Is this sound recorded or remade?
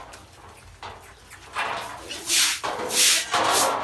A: recorded